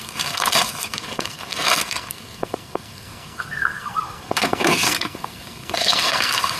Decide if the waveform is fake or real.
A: fake